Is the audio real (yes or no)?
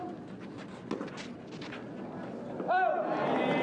yes